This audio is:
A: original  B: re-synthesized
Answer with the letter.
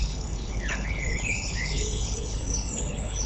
B